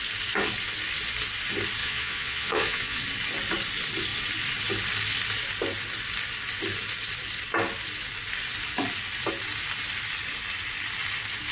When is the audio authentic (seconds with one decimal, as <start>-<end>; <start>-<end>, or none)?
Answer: 0.0-1.8; 3.0-11.5